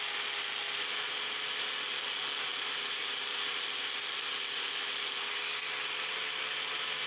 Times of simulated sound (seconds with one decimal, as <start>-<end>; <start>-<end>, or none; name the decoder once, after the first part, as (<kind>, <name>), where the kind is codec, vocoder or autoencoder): 2.5-6.4 (vocoder, BigVGAN v2)